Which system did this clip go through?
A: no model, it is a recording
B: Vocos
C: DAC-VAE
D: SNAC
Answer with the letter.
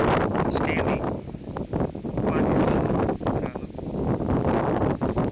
A